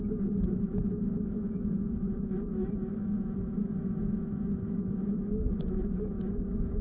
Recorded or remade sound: remade